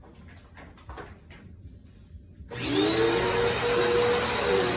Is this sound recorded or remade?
recorded